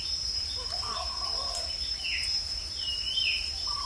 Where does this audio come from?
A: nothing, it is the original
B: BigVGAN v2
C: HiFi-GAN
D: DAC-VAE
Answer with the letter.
B